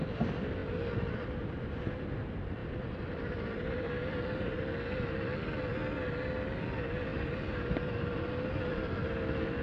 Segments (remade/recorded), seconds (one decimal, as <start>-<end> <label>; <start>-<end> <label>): 0.0-2.6 recorded; 2.6-4.6 remade; 4.6-7.1 recorded; 7.1-8.3 remade; 8.3-9.6 recorded